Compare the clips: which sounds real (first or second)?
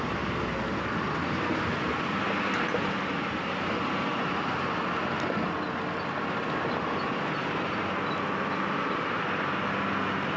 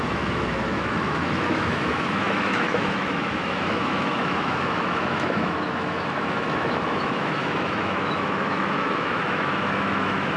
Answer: first